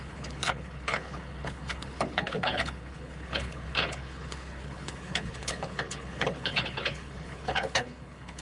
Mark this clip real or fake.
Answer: fake